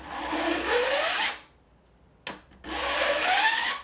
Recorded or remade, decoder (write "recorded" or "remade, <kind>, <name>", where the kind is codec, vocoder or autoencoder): recorded